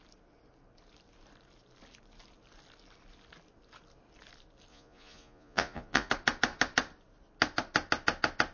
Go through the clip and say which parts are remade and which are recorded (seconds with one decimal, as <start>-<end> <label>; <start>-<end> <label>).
0.0-4.7 recorded; 4.7-6.1 remade; 6.1-8.5 recorded